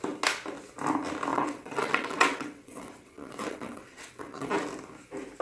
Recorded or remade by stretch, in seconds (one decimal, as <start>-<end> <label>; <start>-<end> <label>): 0.0-1.3 recorded; 1.3-4.5 remade; 4.5-5.4 recorded